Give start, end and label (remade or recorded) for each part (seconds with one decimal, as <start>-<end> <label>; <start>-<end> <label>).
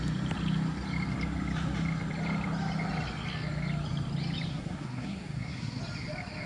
0.0-4.5 recorded; 4.5-5.8 remade; 5.8-6.5 recorded